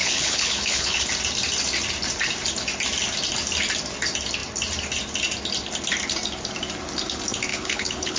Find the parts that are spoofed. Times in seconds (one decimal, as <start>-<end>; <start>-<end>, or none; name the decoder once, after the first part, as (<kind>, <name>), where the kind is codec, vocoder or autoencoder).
0.0-1.1 (codec, HILCodec); 7.5-8.2